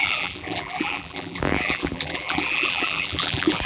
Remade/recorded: remade